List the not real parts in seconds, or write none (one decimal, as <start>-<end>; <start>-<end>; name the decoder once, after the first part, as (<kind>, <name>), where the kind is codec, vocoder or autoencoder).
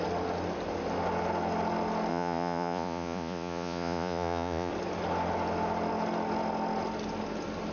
2.1-4.7 (vocoder, Vocos)